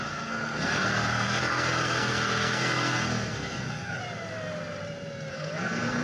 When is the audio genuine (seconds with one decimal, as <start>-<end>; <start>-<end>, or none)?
4.0-5.3